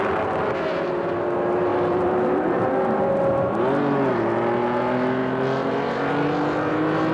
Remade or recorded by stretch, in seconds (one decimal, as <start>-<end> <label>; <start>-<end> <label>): 0.0-1.7 recorded; 1.7-3.4 remade; 3.4-5.2 recorded; 5.2-6.1 remade; 6.1-7.1 recorded